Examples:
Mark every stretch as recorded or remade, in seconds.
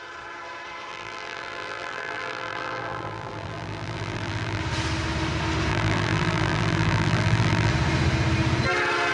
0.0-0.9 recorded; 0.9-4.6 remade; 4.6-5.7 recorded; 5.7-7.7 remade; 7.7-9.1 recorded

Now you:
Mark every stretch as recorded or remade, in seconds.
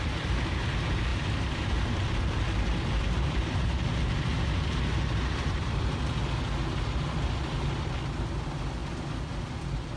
0.0-1.1 recorded; 1.1-4.0 remade; 4.0-4.6 recorded; 4.6-5.9 remade; 5.9-10.0 recorded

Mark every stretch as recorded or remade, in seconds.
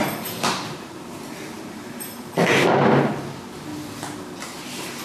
0.0-3.7 remade; 3.7-4.3 recorded; 4.3-5.0 remade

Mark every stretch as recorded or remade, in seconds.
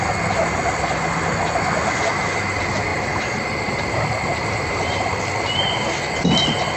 0.0-2.9 recorded; 2.9-5.2 remade; 5.2-6.8 recorded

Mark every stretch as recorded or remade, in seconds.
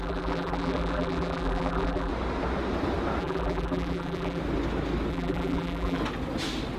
0.0-2.1 remade; 2.1-3.2 recorded; 3.2-4.4 remade; 4.4-5.1 recorded; 5.1-6.0 remade; 6.0-6.8 recorded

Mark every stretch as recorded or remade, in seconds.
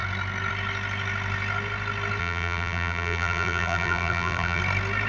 0.0-2.2 recorded; 2.2-4.6 remade; 4.6-5.1 recorded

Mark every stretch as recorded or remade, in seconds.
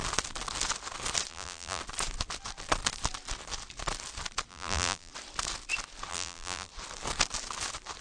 0.0-1.3 recorded; 1.3-1.8 remade; 1.8-4.5 recorded; 4.5-5.1 remade; 5.1-6.1 recorded; 6.1-6.7 remade; 6.7-8.0 recorded